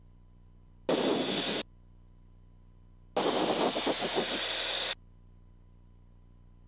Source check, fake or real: real